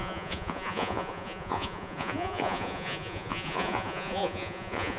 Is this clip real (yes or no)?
no